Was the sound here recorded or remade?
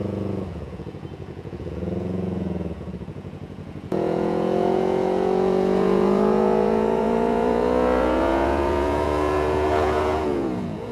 remade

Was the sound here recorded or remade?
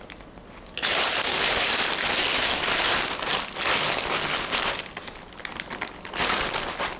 recorded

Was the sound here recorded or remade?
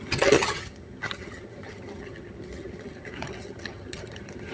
remade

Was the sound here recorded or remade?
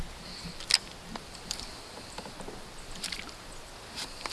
recorded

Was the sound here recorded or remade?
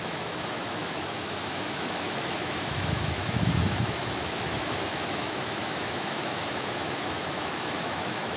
remade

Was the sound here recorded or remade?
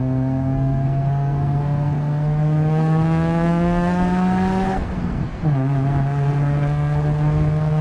remade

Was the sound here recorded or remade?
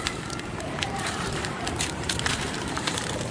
remade